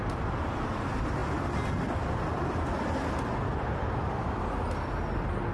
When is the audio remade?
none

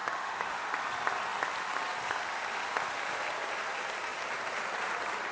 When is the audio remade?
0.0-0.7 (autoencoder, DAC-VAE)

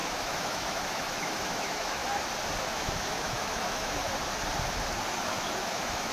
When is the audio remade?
0.0-2.0 (autoencoder, DAC-VAE); 2.6-4.0; 5.2-6.1

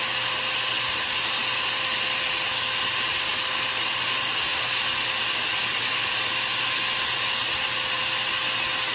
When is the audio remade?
none